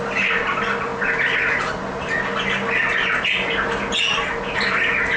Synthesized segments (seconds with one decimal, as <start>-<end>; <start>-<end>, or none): none